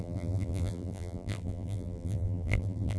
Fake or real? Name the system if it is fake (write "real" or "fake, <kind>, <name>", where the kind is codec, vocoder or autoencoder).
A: fake, vocoder, BigVGAN v2